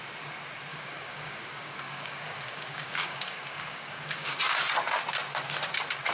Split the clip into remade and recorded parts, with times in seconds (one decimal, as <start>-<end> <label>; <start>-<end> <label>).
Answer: 0.0-0.7 recorded; 0.7-4.4 remade; 4.4-6.1 recorded